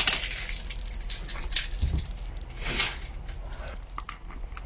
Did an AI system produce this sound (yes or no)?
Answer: no